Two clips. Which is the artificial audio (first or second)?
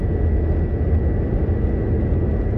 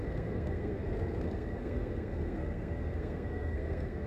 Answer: second